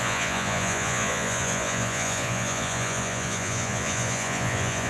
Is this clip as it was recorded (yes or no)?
no